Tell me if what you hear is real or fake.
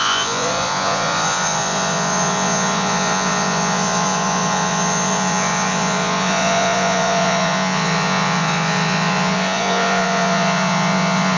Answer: fake